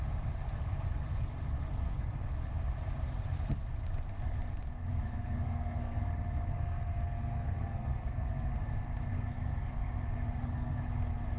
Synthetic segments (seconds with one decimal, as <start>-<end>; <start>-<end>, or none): 1.7-2.3; 4.9-6.0; 6.5-8.5; 9.1-10.8